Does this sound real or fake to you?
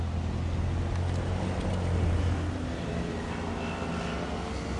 real